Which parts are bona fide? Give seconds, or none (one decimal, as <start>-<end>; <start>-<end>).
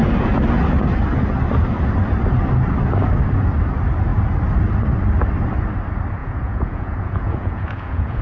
0.0-6.2